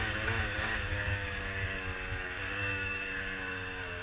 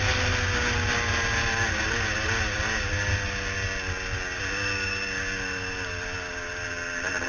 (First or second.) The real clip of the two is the second